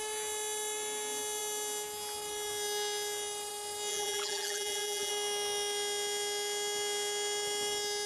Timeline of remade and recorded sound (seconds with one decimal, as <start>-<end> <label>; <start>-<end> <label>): 0.0-3.9 recorded; 3.9-5.1 remade; 5.1-8.1 recorded